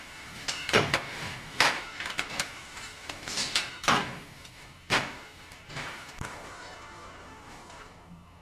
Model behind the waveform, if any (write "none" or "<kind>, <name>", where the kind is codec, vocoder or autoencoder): codec, DAC